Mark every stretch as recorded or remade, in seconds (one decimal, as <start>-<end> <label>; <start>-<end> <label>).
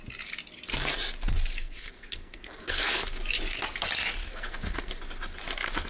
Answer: 0.0-1.6 recorded; 1.6-3.2 remade; 3.2-4.2 recorded; 4.2-5.0 remade; 5.0-5.9 recorded